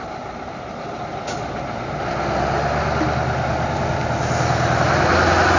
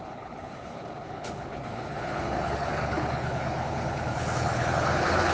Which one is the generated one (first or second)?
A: second